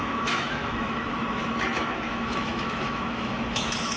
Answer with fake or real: fake